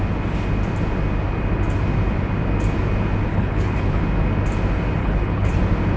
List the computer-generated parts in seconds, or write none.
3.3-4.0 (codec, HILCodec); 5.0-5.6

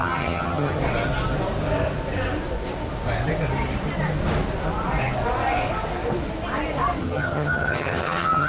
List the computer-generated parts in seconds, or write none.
0.0-0.8 (vocoder, HiFi-GAN); 7.0-8.5

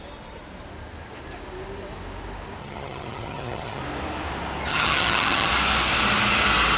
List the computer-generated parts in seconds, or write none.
2.6-3.8 (vocoder, HiFi-GAN); 4.7-5.5

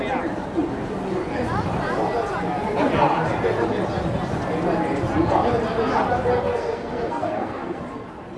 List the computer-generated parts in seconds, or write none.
6.5-7.8 (codec, SNAC)

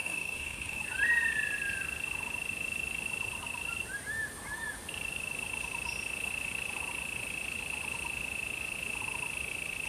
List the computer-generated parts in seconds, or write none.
0.0-0.8 (codec, DAC)